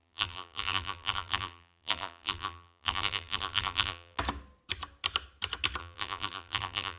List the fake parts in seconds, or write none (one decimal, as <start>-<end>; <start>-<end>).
0.0-4.2; 5.8-7.0